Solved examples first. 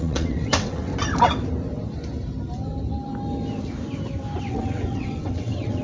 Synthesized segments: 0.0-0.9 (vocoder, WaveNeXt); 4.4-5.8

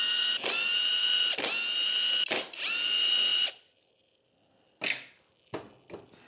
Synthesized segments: none

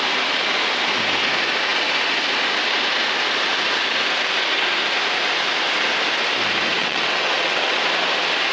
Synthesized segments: 6.8-7.8 (vocoder, WaveNeXt)

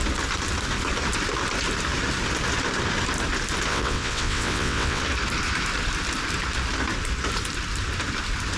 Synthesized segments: 3.7-5.0 (vocoder, WaveNeXt)

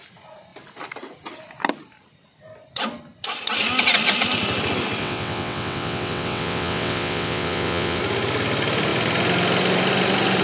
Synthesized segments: 5.0-8.0 (vocoder, WaveNeXt)

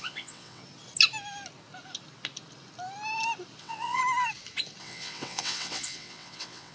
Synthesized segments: 0.0-0.6 (vocoder, WaveNeXt); 3.6-4.0; 4.8-6.7